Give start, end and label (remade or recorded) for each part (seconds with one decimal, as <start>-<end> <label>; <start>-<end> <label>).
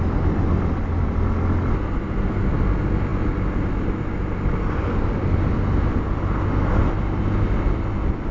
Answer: 0.0-8.3 recorded